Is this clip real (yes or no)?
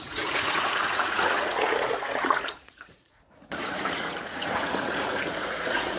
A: no